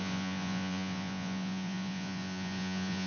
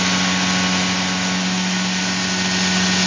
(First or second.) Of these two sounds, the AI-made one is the first